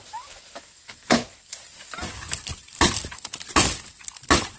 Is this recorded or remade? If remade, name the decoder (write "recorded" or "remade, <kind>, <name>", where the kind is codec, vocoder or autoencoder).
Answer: recorded